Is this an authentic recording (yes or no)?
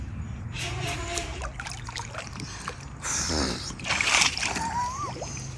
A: no